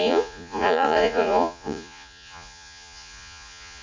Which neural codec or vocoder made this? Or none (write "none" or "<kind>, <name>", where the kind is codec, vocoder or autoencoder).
vocoder, Vocos